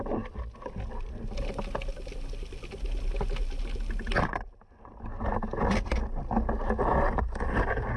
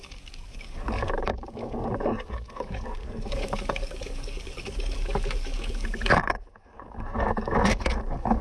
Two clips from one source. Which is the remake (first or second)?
second